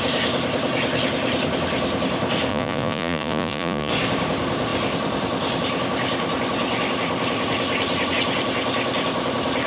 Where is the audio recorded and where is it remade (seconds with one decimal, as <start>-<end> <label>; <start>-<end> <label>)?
0.0-2.5 recorded; 2.5-3.9 remade; 3.9-9.7 recorded